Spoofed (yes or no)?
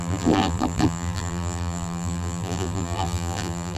yes